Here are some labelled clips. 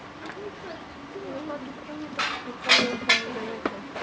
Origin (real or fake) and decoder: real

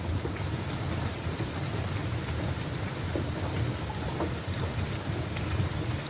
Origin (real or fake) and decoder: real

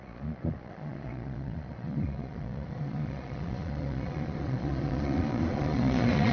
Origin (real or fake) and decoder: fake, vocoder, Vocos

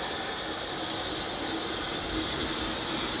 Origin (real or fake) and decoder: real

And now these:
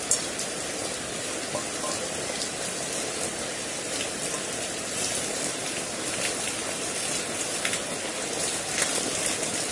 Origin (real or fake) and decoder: real